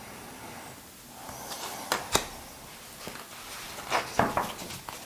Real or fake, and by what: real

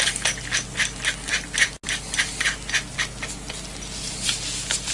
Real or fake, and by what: real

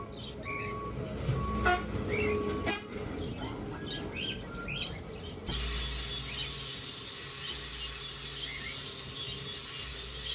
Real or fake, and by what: real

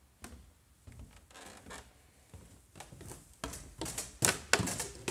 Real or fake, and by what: real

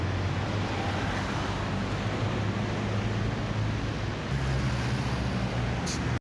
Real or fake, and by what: real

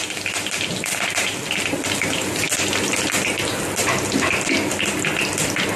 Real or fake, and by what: real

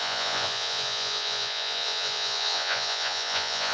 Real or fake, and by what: fake, vocoder, Vocos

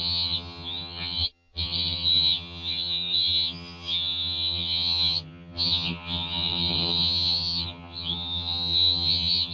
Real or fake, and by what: fake, vocoder, HiFi-GAN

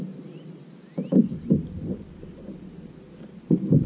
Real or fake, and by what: real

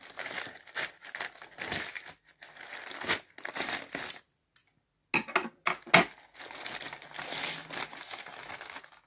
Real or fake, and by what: real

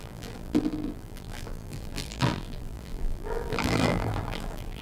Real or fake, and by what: fake, vocoder, BigVGAN v2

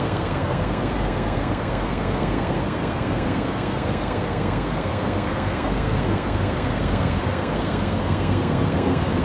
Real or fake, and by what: fake, codec, SNAC